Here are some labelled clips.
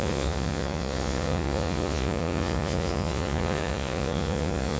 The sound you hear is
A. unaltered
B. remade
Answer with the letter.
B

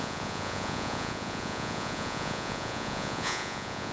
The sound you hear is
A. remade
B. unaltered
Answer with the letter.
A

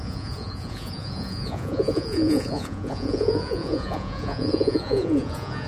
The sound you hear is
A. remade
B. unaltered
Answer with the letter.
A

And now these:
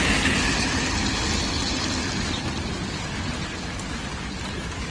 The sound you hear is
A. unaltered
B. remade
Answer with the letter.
A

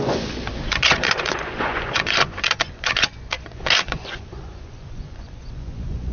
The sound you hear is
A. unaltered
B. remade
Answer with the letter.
B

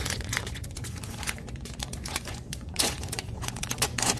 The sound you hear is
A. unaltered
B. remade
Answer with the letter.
B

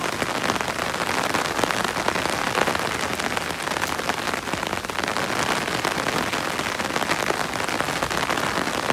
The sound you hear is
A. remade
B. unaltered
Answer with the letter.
B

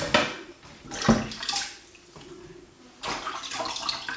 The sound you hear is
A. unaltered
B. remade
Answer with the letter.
A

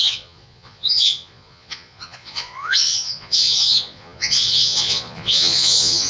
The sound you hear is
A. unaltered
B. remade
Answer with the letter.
B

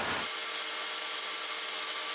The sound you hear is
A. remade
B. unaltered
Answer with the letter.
B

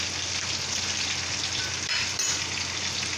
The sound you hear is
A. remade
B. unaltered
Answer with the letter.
B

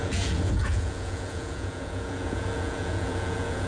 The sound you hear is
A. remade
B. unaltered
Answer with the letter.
A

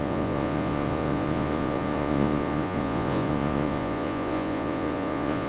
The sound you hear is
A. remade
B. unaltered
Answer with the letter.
A